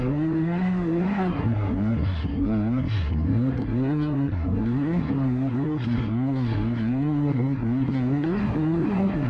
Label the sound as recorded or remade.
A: remade